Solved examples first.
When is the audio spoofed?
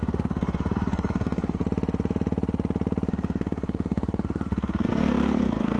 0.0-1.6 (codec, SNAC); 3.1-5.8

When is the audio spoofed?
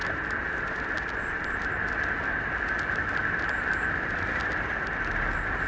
none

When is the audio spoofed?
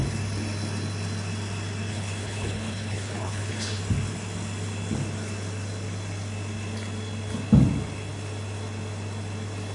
1.9-3.8 (codec, HILCodec)